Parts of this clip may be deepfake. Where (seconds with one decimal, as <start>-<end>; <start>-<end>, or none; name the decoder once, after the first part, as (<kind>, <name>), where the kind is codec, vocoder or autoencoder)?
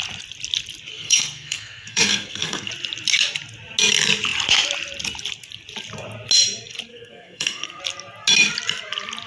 0.9-2.7 (codec, SNAC); 6.9-7.8